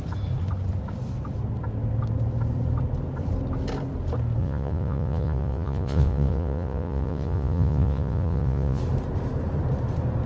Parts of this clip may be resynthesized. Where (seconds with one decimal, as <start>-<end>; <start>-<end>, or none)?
4.4-8.8